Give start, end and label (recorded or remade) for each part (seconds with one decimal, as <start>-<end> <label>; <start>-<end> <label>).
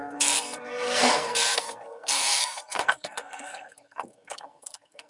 0.0-5.1 remade